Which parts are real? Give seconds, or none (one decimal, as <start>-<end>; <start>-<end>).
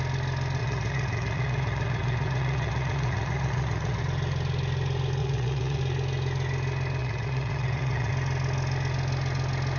0.0-0.6; 4.0-5.2; 5.8-7.0; 8.1-9.8